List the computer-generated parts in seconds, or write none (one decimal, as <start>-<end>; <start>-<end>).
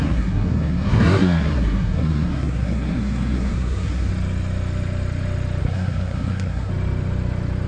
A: 0.0-4.1; 5.6-6.7